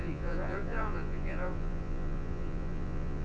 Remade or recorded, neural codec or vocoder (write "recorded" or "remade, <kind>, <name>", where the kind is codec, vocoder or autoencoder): remade, vocoder, Vocos